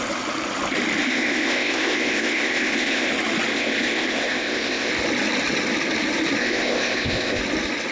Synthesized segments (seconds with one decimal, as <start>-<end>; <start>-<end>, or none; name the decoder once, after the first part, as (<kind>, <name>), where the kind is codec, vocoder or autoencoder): 1.0-3.1 (codec, ZipCodec); 3.5-4.9; 6.4-7.4